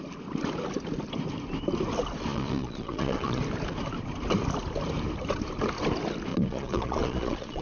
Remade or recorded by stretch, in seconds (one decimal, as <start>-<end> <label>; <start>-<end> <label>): 0.0-2.3 recorded; 2.3-3.4 remade; 3.4-6.3 recorded; 6.3-7.6 remade